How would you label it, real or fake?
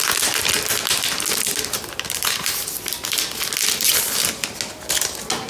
real